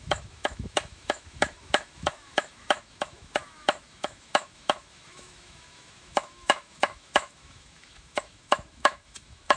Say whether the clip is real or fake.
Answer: fake